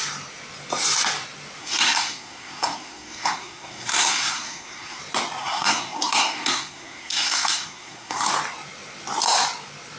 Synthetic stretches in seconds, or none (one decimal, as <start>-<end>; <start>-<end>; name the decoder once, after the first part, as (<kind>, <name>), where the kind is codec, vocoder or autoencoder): 1.6-5.0 (codec, SNAC); 5.4-8.3